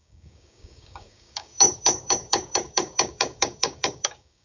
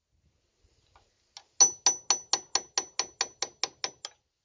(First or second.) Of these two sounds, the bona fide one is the second